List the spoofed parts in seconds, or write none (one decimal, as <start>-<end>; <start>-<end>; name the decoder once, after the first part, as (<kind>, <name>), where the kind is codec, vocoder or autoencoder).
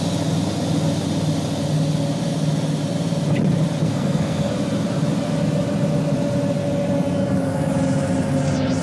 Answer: 3.8-4.5 (codec, SNAC)